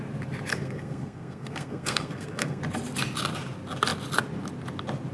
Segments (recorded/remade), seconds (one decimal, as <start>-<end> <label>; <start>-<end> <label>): 0.0-0.5 recorded; 0.5-2.6 remade; 2.6-5.1 recorded